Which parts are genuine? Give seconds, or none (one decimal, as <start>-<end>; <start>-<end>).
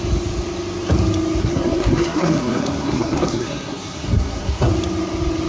0.0-1.4; 4.7-5.5